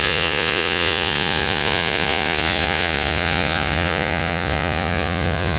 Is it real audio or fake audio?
fake